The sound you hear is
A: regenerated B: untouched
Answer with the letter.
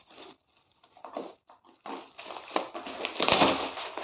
B